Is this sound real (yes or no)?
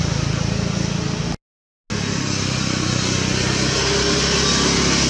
yes